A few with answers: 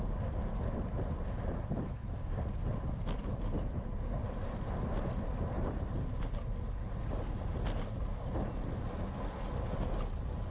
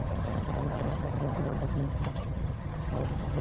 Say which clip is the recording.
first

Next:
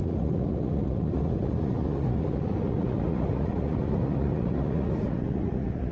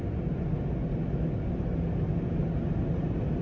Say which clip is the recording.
second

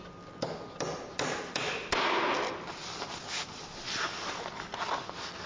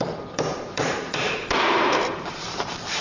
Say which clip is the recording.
first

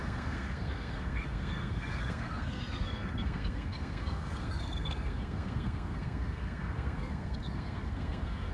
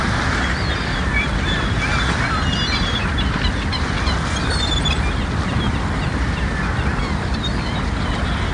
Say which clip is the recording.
second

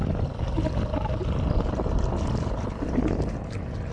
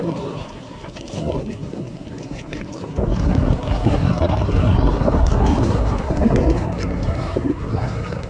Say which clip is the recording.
first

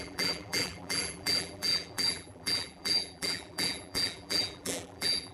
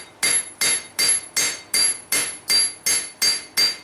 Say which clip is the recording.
second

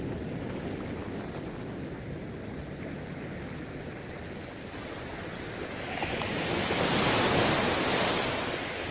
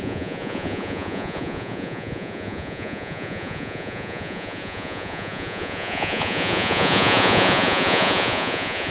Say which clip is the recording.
first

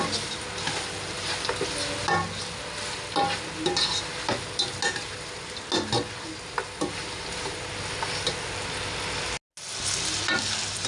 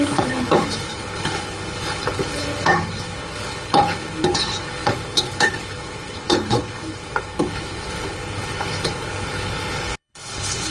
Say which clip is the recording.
first